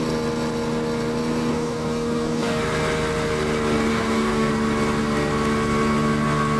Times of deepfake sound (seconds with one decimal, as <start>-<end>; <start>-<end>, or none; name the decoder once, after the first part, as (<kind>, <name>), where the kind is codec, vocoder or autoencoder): 1.5-2.6 (codec, DAC); 3.9-4.5